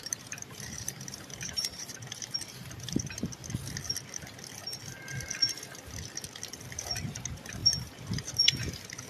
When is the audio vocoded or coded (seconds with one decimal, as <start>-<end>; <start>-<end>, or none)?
0.0-3.4; 6.7-9.1

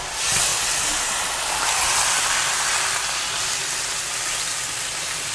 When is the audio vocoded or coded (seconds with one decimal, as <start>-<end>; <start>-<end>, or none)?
none

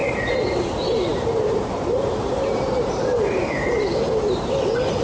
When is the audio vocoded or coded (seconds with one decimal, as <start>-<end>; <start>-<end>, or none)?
0.0-0.7; 1.1-4.1

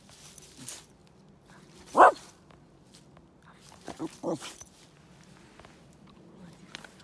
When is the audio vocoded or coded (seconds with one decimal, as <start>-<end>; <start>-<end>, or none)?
none

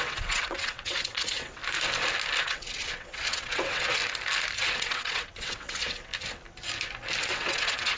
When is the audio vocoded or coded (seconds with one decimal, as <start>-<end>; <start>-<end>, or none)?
0.0-1.6; 2.4-4.0; 4.6-6.1; 7.2-8.0

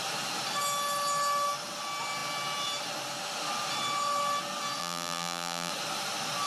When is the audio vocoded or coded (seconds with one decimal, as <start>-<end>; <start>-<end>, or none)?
4.8-5.7

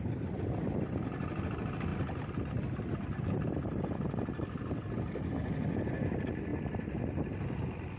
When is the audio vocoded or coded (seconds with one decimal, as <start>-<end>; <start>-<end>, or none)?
none

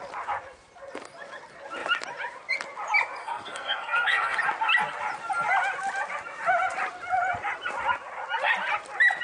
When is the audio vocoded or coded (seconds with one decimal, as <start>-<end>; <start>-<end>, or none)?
3.2-4.4